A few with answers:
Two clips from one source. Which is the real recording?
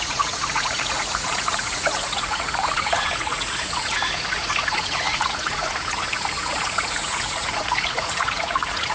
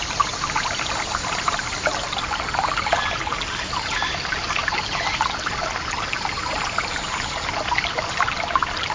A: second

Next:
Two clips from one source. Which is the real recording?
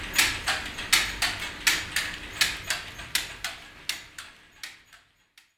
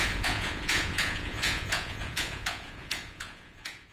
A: first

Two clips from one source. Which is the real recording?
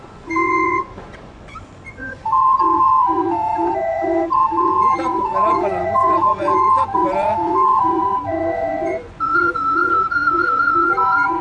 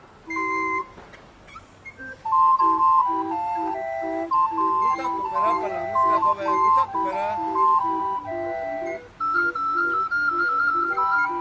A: second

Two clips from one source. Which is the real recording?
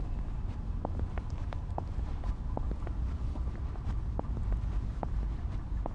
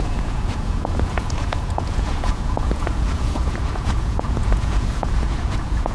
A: first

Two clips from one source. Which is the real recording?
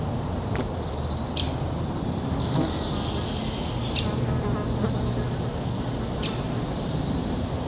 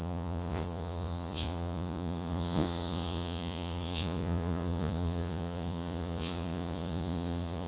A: first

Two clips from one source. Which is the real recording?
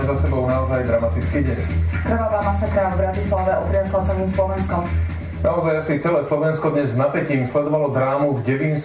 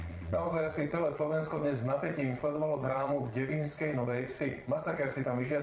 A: first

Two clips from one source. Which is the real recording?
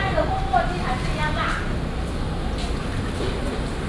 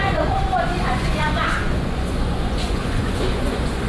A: first